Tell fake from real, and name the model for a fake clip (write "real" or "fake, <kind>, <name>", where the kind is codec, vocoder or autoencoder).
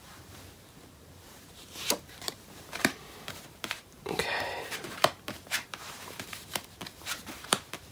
fake, vocoder, BigVGAN v2